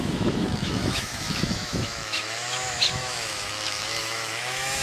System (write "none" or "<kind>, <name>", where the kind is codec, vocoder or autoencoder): autoencoder, DAC-VAE